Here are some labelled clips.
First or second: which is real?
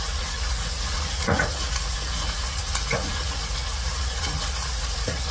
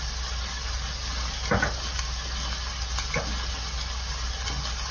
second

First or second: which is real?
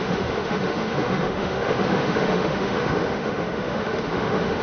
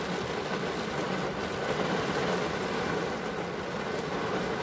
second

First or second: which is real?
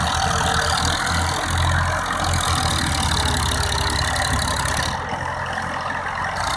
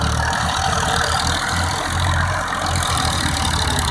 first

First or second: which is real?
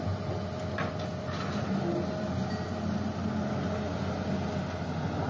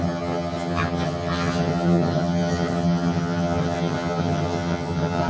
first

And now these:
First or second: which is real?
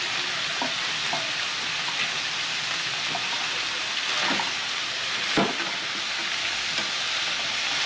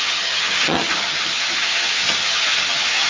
first